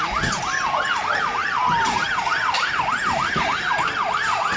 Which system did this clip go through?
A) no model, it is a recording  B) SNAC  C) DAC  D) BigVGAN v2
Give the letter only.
A